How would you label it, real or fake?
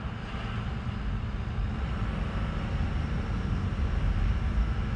real